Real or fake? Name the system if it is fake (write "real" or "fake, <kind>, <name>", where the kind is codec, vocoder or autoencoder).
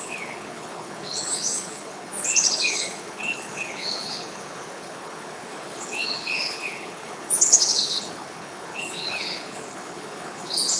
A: fake, codec, HILCodec